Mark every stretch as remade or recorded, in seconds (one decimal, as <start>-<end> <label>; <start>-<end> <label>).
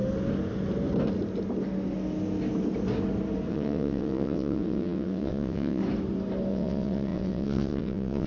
0.0-3.5 recorded; 3.5-5.8 remade; 5.8-6.5 recorded; 6.5-8.3 remade